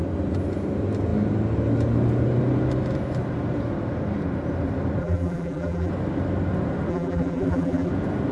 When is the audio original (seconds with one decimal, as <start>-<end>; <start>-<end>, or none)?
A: 0.0-5.0; 5.9-6.9; 7.9-8.3